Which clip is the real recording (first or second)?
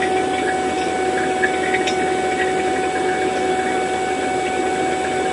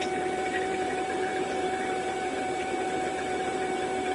first